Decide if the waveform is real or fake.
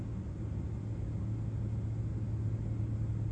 real